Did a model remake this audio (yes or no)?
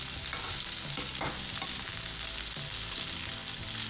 no